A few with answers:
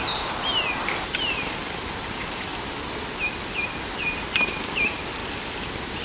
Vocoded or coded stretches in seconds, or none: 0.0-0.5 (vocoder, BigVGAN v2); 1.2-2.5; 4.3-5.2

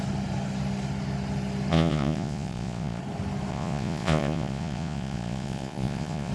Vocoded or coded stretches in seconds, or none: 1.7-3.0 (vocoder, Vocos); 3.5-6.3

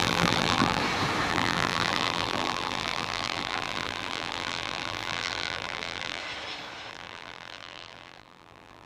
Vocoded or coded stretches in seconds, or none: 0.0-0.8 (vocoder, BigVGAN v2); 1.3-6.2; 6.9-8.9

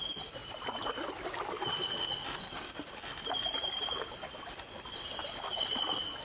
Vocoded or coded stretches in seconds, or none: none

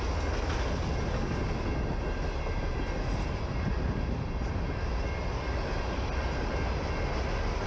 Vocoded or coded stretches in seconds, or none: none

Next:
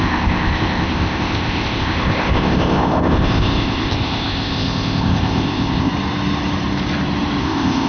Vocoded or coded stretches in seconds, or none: 0.0-5.9 (codec, ZipCodec); 7.4-7.9